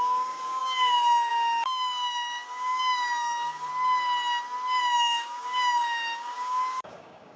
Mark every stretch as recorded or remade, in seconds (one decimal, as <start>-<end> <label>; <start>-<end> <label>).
0.0-3.7 remade; 3.7-4.8 recorded; 4.8-7.4 remade